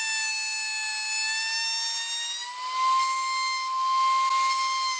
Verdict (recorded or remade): recorded